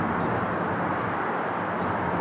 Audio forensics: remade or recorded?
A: recorded